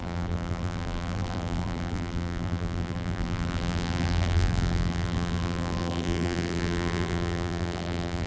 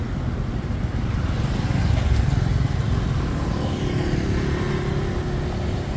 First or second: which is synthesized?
first